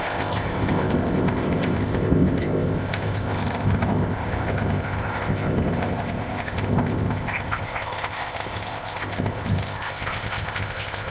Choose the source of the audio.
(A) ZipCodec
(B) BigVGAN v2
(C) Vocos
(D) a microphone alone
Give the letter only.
A